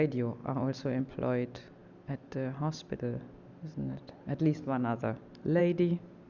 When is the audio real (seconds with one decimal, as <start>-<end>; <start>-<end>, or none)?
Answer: 0.0-6.3